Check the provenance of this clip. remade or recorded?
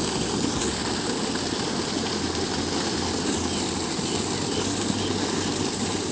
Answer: recorded